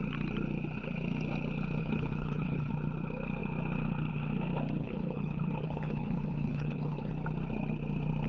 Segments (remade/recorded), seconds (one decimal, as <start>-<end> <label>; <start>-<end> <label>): 0.0-1.8 recorded; 1.8-2.7 remade; 2.7-4.8 recorded; 4.8-7.1 remade; 7.1-8.3 recorded